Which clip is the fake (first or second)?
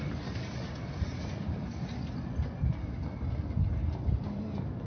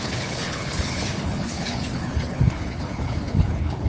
second